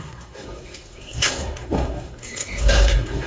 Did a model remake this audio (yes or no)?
yes